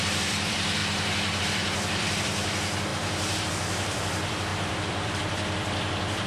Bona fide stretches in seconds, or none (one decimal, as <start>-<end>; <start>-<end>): 0.8-1.4